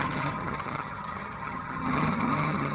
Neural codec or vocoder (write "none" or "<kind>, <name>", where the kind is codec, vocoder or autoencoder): vocoder, HiFi-GAN